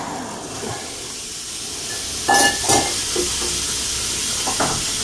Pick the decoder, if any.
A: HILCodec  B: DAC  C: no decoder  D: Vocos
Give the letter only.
C